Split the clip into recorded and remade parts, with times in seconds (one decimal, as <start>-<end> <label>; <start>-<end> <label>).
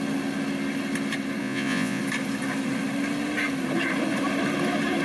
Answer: 0.0-1.4 recorded; 1.4-2.0 remade; 2.0-5.0 recorded